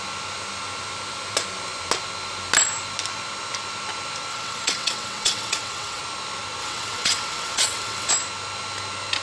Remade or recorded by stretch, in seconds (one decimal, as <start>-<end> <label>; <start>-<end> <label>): 0.0-4.3 recorded; 4.3-6.0 remade; 6.0-6.6 recorded; 6.6-8.1 remade; 8.1-9.2 recorded